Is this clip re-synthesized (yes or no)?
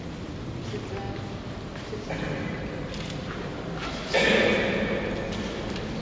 no